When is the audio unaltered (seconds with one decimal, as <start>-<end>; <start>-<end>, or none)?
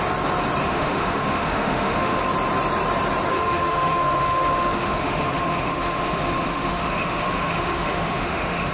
0.0-0.6; 2.2-3.3